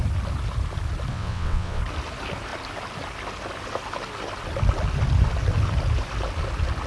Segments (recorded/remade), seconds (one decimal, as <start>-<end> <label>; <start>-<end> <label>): 0.0-1.1 recorded; 1.1-1.8 remade; 1.8-6.9 recorded